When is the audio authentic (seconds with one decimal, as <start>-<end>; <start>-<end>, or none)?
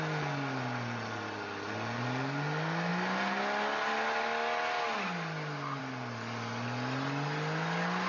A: 0.0-8.1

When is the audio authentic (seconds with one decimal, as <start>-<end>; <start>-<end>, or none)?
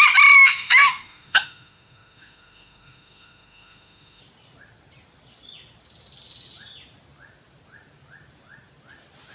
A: 0.0-0.4; 4.2-9.3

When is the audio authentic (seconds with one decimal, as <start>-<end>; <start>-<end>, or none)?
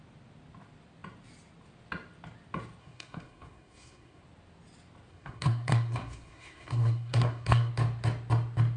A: 0.0-2.8; 4.2-5.1; 7.7-8.8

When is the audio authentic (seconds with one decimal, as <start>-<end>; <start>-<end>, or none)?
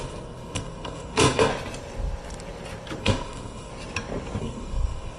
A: 1.5-3.0; 3.7-4.4